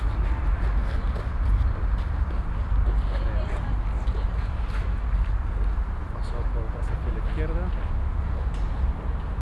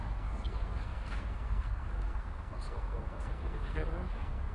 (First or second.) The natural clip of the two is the first